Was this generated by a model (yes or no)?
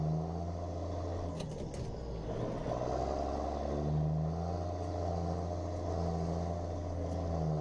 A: no